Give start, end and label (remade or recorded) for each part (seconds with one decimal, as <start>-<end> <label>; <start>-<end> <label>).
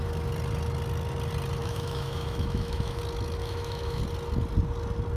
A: 0.0-1.6 recorded; 1.6-3.0 remade; 3.0-3.4 recorded; 3.4-4.0 remade; 4.0-5.2 recorded